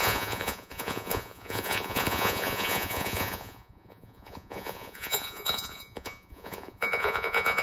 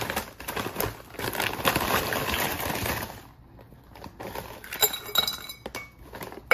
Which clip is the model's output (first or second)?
first